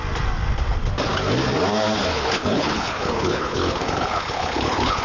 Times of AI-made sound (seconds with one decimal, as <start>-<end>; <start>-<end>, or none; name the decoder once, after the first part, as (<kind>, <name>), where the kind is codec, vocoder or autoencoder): 2.1-5.0 (codec, HILCodec)